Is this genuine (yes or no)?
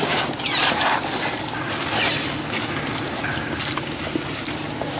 yes